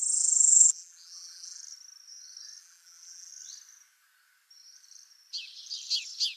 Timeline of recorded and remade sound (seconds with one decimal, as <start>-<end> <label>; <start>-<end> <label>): 0.0-1.6 remade; 1.6-2.6 recorded; 2.6-3.3 remade; 3.3-6.4 recorded